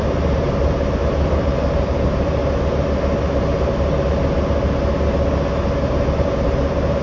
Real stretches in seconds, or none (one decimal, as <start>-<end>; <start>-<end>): 1.0-1.8; 2.4-5.9

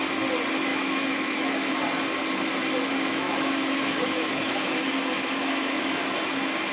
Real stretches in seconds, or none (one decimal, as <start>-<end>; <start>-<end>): 0.0-0.7; 1.7-3.1; 6.0-6.7